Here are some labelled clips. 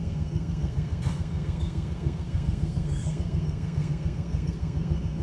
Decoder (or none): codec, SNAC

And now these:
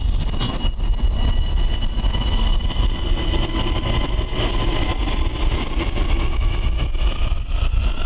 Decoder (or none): none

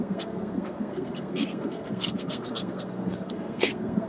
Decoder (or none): codec, SNAC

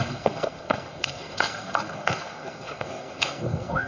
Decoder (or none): codec, SNAC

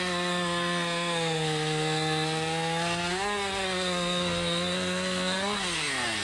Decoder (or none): codec, SNAC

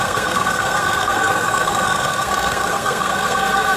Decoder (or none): codec, SNAC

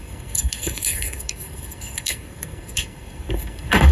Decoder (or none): codec, SNAC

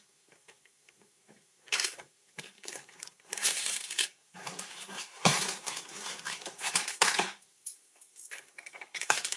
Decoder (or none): codec, SNAC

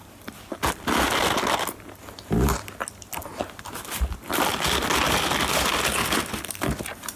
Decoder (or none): none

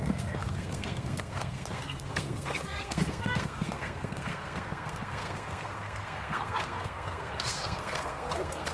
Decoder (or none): codec, SNAC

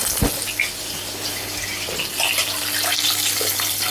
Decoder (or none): none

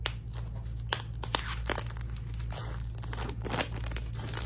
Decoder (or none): none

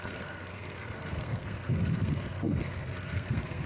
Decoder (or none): codec, SNAC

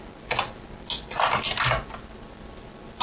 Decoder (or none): none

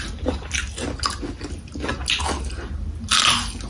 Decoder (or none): none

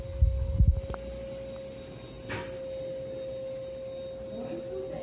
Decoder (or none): none